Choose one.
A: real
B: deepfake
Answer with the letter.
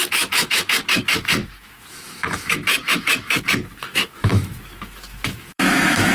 B